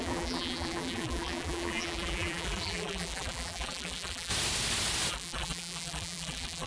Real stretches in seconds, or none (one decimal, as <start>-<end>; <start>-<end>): 4.3-5.1